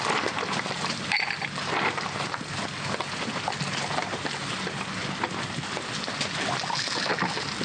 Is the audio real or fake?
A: real